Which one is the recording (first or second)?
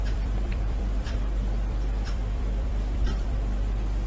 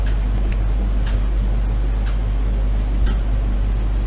second